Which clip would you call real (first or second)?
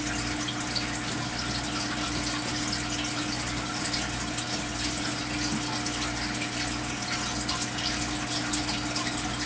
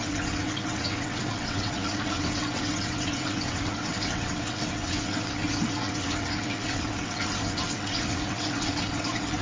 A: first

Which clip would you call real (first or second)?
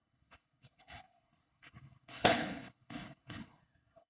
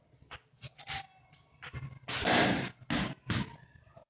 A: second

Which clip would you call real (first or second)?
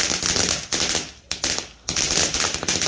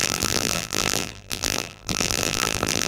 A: first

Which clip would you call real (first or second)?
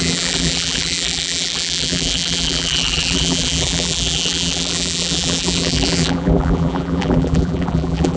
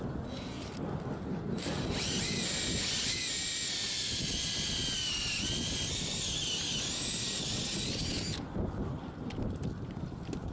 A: second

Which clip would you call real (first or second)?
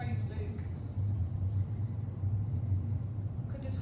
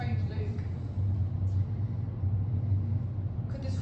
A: second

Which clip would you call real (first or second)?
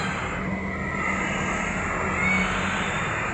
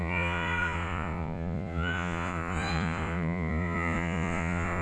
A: first